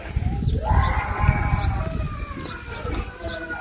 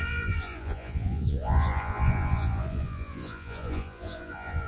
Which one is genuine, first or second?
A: first